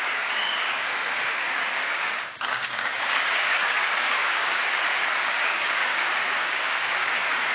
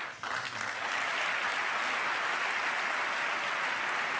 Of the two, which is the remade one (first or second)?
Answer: first